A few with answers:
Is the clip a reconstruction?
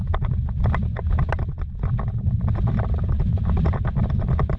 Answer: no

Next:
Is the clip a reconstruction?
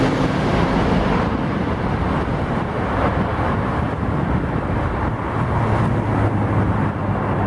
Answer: no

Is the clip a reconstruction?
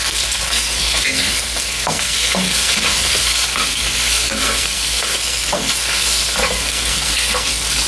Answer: yes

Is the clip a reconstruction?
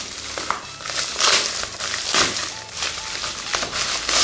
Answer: no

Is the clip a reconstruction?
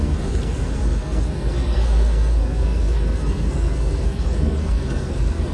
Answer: yes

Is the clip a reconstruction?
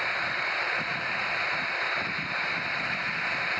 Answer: no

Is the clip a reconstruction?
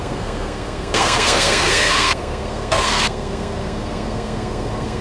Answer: yes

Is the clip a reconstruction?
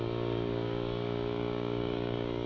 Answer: yes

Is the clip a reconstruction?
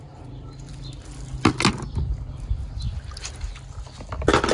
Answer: no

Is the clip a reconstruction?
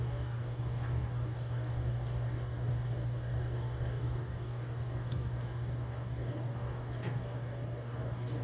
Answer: yes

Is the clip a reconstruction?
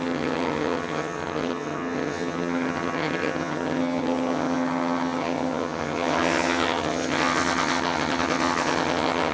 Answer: yes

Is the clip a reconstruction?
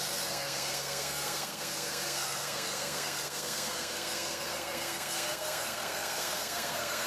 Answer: yes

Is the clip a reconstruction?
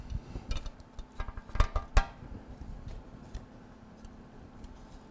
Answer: no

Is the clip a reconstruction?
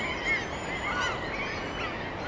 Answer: no